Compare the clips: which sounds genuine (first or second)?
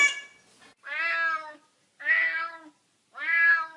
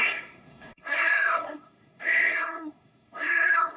first